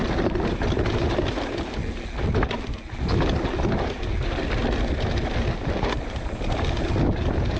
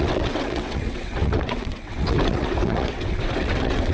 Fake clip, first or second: second